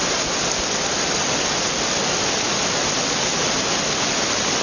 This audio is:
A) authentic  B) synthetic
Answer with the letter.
A